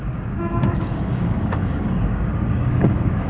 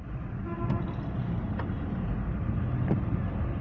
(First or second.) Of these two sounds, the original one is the second